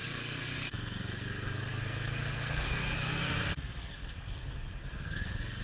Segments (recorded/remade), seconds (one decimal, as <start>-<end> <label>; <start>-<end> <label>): 0.0-3.4 remade; 3.4-3.9 recorded; 3.9-5.6 remade